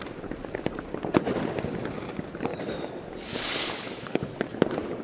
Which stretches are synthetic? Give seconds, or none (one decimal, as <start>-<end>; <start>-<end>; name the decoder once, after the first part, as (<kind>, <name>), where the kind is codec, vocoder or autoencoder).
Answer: 2.5-4.3 (codec, DAC)